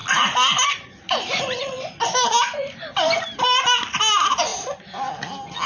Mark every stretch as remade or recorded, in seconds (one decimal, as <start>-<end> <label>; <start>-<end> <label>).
0.0-5.7 recorded